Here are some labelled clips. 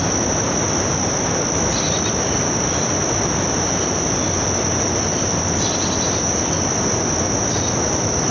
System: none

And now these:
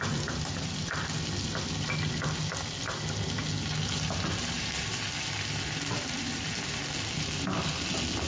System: none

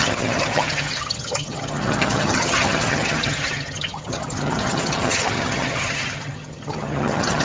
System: vocoder, HiFi-GAN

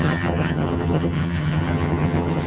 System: vocoder, HiFi-GAN